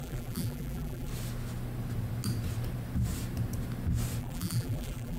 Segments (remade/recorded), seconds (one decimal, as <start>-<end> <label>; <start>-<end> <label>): 0.0-1.1 remade; 1.1-4.2 recorded; 4.2-5.2 remade